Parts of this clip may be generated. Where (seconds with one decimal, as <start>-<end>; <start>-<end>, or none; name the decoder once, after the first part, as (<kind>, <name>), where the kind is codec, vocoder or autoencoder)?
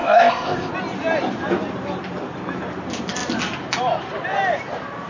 0.0-0.7 (codec, ZipCodec)